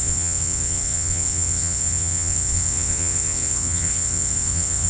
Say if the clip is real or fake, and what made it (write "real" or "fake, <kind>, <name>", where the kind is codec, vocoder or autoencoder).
fake, vocoder, WaveNeXt